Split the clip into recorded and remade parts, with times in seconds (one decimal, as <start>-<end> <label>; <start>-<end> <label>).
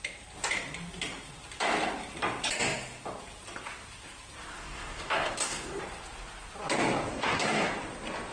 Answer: 0.0-4.5 recorded; 4.5-5.8 remade; 5.8-7.1 recorded; 7.1-7.7 remade; 7.7-8.3 recorded